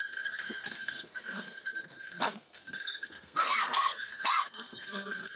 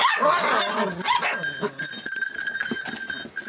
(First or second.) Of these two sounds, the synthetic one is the first